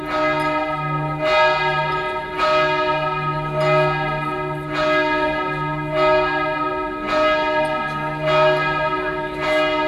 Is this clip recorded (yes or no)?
yes